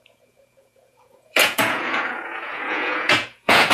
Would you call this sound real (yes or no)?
no